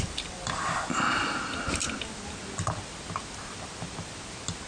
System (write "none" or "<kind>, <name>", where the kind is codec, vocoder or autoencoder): none